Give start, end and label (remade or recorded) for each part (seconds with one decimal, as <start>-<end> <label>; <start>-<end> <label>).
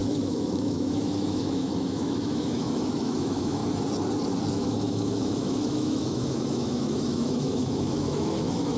0.0-3.6 remade; 3.6-4.5 recorded; 4.5-8.8 remade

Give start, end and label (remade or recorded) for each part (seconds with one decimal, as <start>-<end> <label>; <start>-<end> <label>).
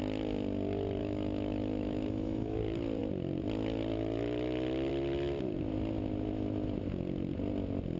0.0-1.0 recorded; 1.0-2.6 remade; 2.6-8.0 recorded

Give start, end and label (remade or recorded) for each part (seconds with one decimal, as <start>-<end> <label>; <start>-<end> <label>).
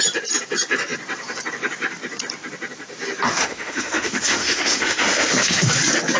0.0-3.4 recorded; 3.4-5.7 remade; 5.7-6.2 recorded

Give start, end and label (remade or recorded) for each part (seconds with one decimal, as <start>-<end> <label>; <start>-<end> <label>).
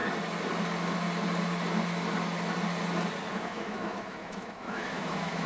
0.0-3.3 recorded; 3.3-5.5 remade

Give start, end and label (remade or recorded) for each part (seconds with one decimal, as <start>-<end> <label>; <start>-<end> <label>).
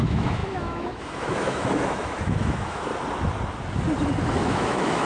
0.0-2.9 remade; 2.9-4.4 recorded; 4.4-5.1 remade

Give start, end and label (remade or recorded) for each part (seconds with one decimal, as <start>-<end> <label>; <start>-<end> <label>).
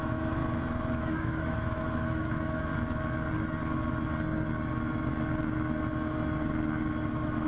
0.0-0.4 remade; 0.4-1.0 recorded; 1.0-2.7 remade; 2.7-7.1 recorded; 7.1-7.5 remade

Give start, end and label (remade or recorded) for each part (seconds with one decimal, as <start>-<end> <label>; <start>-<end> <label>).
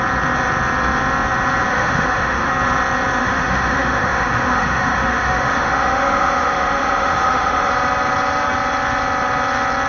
0.0-1.7 recorded; 1.7-2.5 remade; 2.5-3.2 recorded; 3.2-7.7 remade; 7.7-9.9 recorded